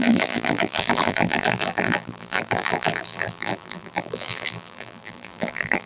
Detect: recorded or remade remade